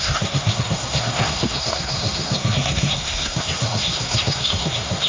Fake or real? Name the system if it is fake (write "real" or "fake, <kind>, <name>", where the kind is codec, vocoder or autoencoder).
fake, codec, SNAC